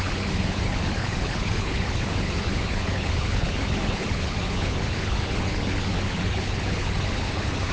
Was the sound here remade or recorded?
remade